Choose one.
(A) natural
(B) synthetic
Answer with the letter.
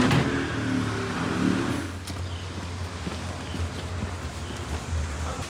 A